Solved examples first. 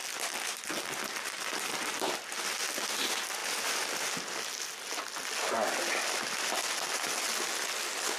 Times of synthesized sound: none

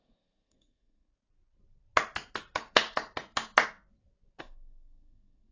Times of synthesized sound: 0.0-1.1 (codec, SNAC); 4.4-5.5